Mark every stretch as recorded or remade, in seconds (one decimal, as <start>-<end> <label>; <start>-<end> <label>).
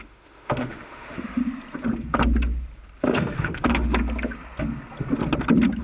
0.0-1.4 remade; 1.4-3.0 recorded; 3.0-4.0 remade; 4.0-5.8 recorded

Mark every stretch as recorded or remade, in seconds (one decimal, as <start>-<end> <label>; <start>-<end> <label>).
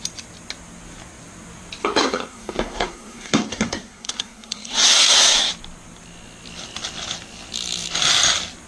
0.0-1.8 recorded; 1.8-5.5 remade; 5.5-8.7 recorded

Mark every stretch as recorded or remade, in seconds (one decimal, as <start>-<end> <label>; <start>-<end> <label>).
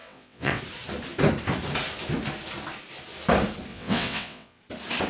0.0-0.6 remade; 0.6-3.7 recorded; 3.7-4.6 remade; 4.6-5.1 recorded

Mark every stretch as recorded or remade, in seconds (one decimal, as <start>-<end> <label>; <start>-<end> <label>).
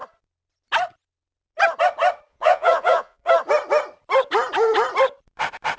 0.0-2.3 recorded; 2.3-3.3 remade; 3.3-5.8 recorded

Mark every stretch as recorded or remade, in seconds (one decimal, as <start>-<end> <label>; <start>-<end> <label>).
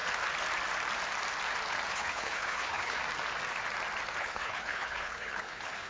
0.0-1.9 recorded; 1.9-3.0 remade; 3.0-4.2 recorded; 4.2-5.9 remade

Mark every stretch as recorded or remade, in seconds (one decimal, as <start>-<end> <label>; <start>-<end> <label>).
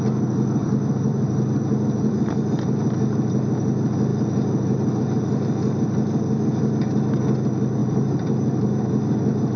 0.0-0.6 recorded; 0.6-2.4 remade; 2.4-7.8 recorded; 7.8-8.8 remade; 8.8-9.6 recorded